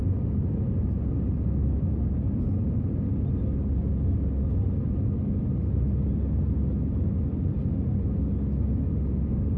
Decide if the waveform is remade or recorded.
recorded